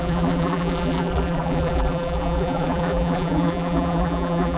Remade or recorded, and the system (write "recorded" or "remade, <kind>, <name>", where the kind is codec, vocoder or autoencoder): remade, vocoder, BigVGAN v2